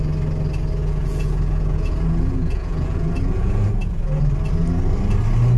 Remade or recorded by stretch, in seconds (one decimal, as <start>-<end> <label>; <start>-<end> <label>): 0.0-0.8 recorded; 0.8-4.2 remade; 4.2-5.6 recorded